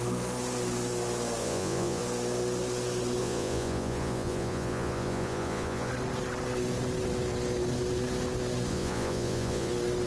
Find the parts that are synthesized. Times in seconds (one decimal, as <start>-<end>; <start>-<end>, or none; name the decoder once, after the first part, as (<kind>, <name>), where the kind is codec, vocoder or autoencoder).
1.4-2.0 (vocoder, Vocos); 3.2-5.9; 8.7-9.7